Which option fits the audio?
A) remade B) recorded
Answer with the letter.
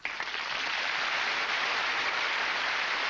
B